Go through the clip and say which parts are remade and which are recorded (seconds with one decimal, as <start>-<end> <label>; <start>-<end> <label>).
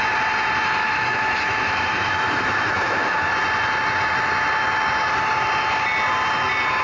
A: 0.0-0.8 recorded; 0.8-3.3 remade; 3.3-6.8 recorded